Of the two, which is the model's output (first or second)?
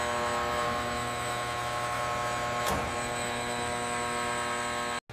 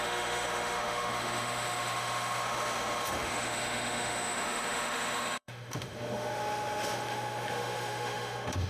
second